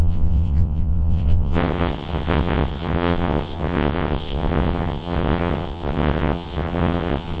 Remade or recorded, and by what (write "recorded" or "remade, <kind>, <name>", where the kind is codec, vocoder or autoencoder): remade, vocoder, WaveNeXt